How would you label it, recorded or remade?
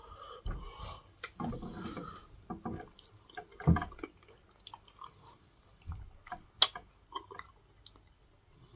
recorded